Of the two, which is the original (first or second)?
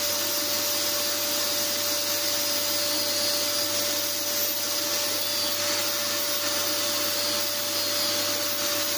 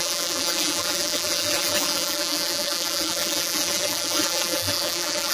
first